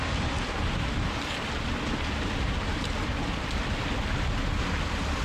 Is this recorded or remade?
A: recorded